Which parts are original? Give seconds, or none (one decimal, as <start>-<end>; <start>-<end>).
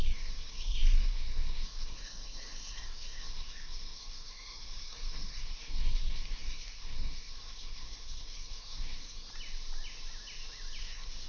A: 9.3-10.8